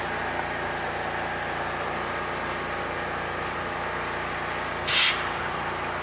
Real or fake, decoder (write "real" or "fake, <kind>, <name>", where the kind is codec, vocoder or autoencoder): real